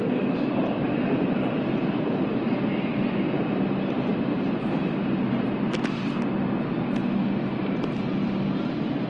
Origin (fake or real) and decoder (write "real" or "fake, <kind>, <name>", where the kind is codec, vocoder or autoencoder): real